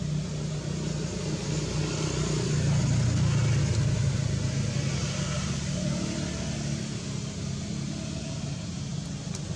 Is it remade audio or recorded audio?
recorded